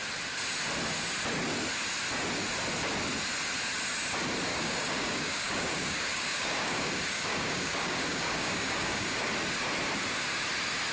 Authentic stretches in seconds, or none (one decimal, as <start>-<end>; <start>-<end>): 0.0-4.5; 9.3-10.9